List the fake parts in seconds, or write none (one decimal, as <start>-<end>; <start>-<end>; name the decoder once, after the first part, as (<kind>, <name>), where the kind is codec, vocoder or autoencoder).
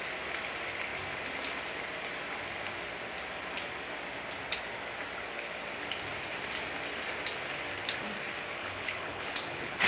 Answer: 8.6-9.9 (codec, HILCodec)